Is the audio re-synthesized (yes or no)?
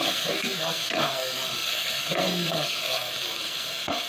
yes